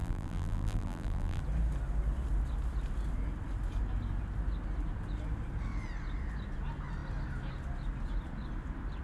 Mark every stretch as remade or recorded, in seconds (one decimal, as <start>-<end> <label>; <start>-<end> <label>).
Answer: 0.0-1.4 remade; 1.4-9.0 recorded